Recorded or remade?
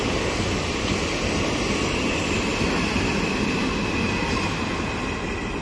recorded